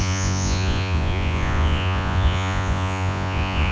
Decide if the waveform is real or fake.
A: fake